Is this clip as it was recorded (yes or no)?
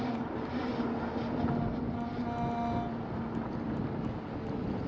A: yes